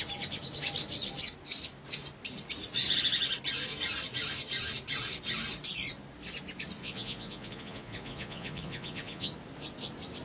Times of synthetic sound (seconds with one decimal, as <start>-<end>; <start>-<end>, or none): 6.8-9.3